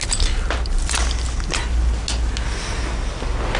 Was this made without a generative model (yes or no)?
yes